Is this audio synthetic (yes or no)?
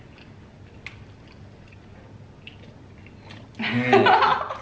no